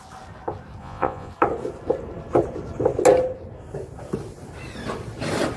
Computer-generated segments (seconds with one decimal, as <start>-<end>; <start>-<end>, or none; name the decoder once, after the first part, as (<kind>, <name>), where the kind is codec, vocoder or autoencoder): 0.8-1.3 (vocoder, Vocos)